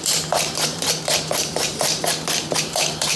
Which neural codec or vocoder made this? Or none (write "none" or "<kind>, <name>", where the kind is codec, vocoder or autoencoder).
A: vocoder, BigVGAN v2